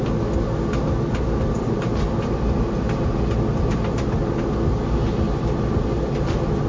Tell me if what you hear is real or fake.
real